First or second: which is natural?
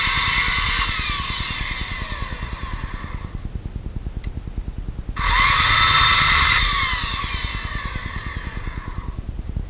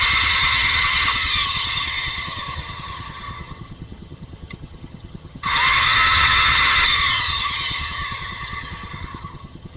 first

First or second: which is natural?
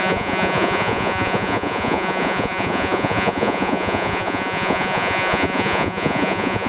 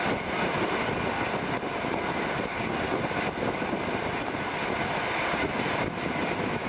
second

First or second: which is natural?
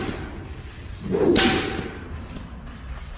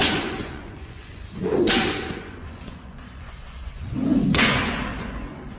first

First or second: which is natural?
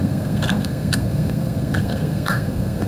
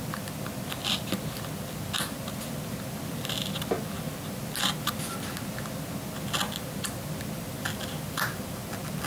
second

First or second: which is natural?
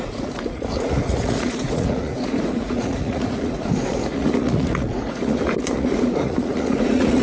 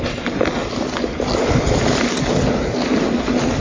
second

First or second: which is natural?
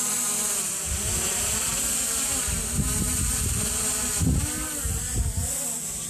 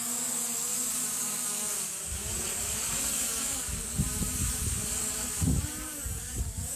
first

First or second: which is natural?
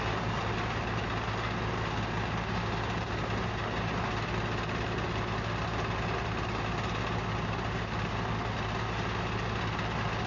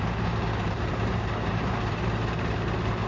first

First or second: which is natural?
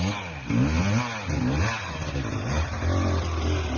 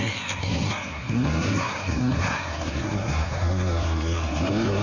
first